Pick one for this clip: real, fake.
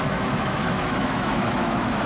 fake